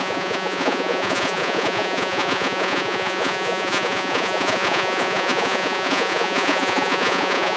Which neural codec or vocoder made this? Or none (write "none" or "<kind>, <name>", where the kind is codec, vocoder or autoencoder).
vocoder, Vocos